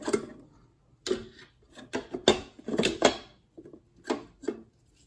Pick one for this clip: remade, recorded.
recorded